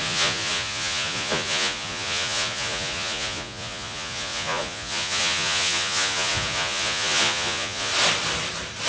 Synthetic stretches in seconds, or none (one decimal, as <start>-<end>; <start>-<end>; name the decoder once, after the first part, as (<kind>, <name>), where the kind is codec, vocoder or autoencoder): 0.0-7.9 (vocoder, Vocos)